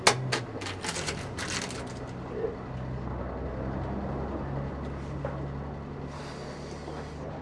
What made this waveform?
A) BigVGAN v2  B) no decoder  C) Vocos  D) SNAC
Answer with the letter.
B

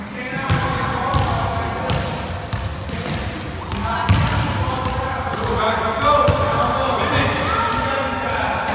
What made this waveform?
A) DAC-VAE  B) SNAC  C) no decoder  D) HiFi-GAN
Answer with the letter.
C